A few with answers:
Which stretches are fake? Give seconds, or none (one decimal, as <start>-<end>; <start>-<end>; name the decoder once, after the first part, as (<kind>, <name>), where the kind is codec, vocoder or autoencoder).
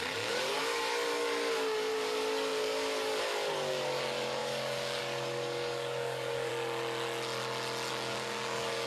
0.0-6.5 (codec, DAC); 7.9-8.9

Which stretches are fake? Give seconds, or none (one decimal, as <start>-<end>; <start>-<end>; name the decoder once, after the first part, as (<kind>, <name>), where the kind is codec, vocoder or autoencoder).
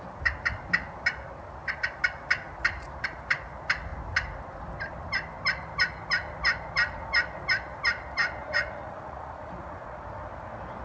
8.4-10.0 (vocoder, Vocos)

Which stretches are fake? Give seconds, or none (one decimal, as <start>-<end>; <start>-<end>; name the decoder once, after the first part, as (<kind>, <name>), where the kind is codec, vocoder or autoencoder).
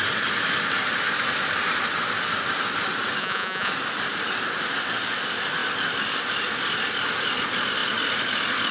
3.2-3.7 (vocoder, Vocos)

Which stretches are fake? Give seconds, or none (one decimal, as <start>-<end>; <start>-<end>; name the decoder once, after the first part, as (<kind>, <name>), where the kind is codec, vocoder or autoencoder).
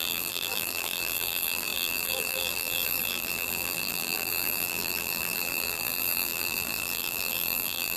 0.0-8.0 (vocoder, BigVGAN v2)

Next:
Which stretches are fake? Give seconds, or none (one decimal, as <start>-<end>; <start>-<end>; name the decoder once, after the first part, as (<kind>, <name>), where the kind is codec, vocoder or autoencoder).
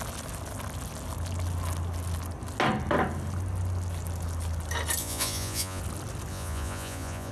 5.0-5.8 (vocoder, Vocos); 6.3-7.3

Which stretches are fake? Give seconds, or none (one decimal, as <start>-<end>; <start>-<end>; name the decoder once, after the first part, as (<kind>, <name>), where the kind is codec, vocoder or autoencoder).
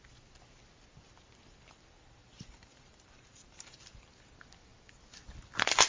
2.2-4.1 (vocoder, BigVGAN v2)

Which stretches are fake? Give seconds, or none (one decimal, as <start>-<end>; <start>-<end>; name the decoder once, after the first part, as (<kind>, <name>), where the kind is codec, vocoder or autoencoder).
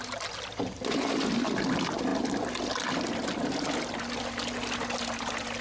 none